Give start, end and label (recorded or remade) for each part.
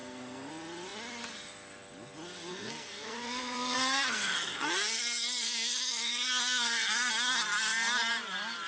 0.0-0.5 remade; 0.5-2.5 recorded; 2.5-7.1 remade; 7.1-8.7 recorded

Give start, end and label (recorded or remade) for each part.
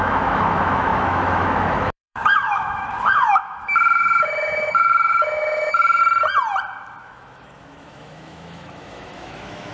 0.0-6.0 remade; 6.0-7.0 recorded; 7.0-9.7 remade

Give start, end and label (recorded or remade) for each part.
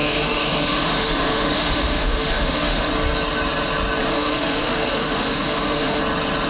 0.0-2.9 remade; 2.9-4.0 recorded; 4.0-6.0 remade; 6.0-6.5 recorded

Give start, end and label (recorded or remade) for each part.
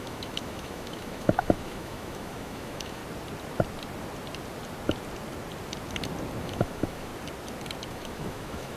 0.0-3.0 remade; 3.0-6.4 recorded; 6.4-7.1 remade; 7.1-7.9 recorded; 7.9-8.8 remade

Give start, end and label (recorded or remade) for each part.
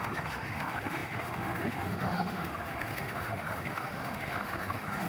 0.0-5.1 remade